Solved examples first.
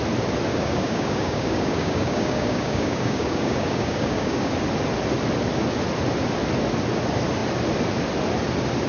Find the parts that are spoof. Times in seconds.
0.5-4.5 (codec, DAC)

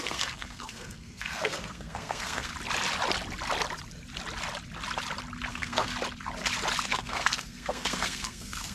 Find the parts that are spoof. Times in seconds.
0.0-2.5 (codec, SNAC); 5.5-5.9; 6.8-8.7

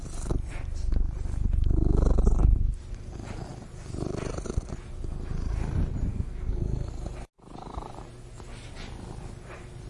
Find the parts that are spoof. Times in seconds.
6.1-6.9 (codec, SNAC)

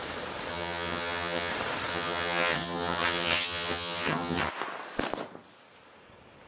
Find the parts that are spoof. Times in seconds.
0.5-1.5 (vocoder, HiFi-GAN); 1.9-4.5

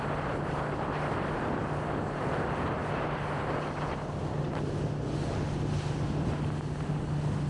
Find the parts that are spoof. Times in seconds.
none